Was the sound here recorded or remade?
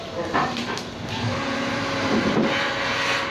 remade